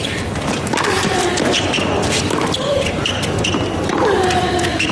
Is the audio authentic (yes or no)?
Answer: no